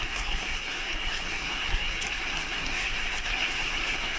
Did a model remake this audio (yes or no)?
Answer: yes